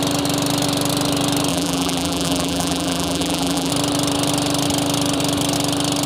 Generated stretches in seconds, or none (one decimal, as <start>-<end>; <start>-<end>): 1.5-3.7